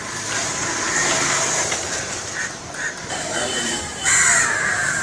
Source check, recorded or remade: remade